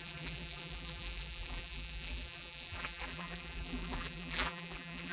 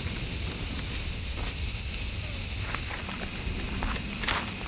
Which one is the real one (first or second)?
second